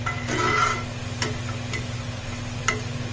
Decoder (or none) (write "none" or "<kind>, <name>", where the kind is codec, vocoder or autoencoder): none